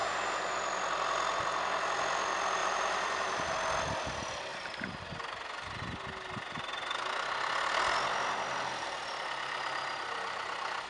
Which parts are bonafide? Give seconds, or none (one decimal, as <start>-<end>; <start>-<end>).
0.6-2.6; 3.5-10.9